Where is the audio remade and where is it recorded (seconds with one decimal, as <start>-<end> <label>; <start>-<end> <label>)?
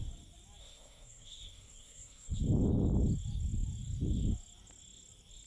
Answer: 0.0-0.6 recorded; 0.6-2.4 remade; 2.4-5.5 recorded